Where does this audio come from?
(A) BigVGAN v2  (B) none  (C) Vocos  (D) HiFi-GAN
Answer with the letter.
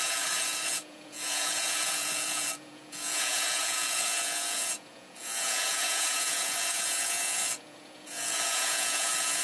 C